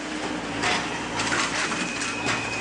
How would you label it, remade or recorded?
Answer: recorded